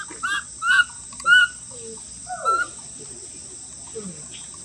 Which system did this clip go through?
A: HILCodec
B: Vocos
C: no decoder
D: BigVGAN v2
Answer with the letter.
C